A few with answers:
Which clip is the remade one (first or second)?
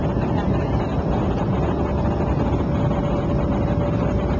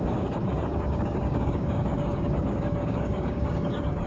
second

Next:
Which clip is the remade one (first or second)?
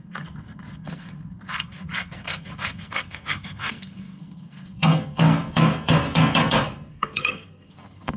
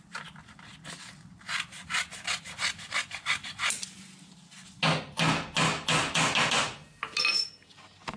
first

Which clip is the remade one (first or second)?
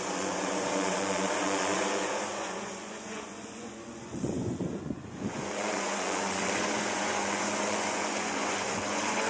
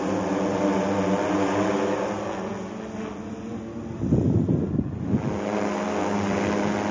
first